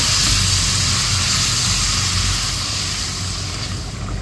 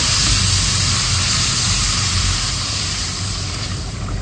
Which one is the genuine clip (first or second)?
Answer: first